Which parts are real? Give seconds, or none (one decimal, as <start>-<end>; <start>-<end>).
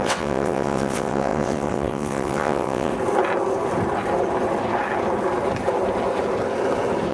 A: 2.9-7.1